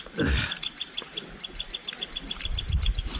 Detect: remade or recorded remade